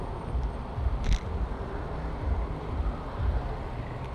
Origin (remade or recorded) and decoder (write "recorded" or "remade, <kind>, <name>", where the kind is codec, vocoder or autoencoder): recorded